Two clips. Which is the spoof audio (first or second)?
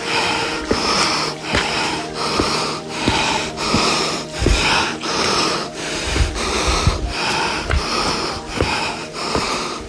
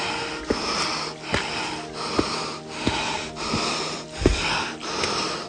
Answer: first